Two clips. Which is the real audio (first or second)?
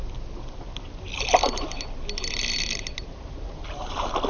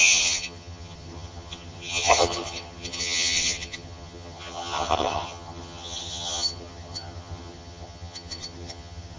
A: first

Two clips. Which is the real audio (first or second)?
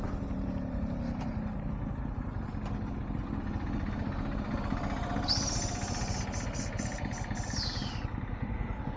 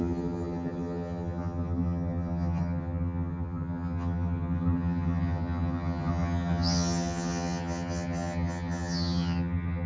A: first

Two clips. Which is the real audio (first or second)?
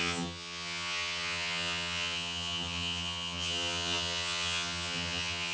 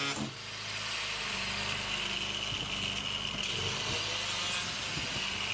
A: second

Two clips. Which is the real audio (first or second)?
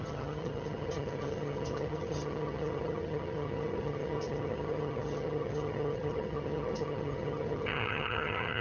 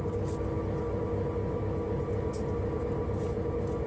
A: second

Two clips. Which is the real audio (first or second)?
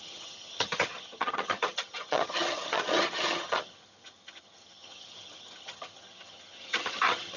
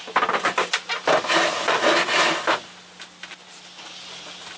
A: second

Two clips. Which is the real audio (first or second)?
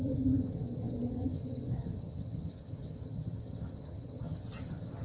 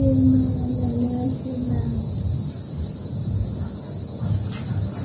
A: second